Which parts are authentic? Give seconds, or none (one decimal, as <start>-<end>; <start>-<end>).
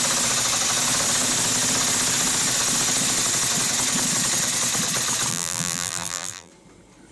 0.0-5.3; 6.5-7.1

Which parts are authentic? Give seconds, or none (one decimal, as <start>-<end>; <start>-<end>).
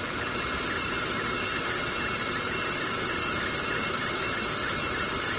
none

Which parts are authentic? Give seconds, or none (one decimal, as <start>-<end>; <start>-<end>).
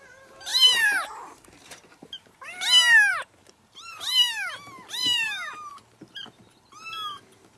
0.0-0.5; 2.1-3.1; 4.5-5.0; 5.7-7.6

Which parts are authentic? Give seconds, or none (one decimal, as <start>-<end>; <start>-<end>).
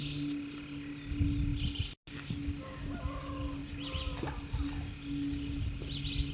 0.0-6.3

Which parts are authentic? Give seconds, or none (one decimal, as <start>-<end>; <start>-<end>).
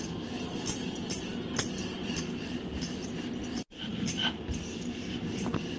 0.0-5.8